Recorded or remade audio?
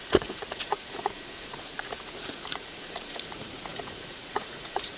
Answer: remade